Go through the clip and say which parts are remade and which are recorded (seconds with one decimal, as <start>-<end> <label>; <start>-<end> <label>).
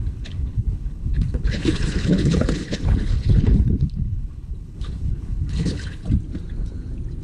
0.0-6.0 remade; 6.0-7.2 recorded